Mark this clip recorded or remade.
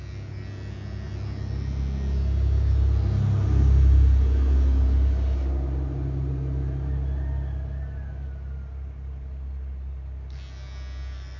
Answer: recorded